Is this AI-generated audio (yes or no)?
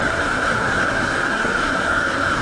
yes